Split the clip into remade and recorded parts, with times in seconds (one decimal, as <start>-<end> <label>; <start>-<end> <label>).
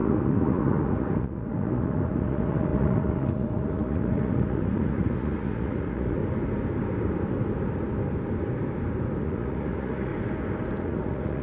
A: 0.0-6.2 remade; 6.2-9.2 recorded; 9.2-10.1 remade; 10.1-10.8 recorded; 10.8-11.4 remade